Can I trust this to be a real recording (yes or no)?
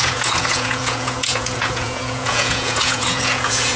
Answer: no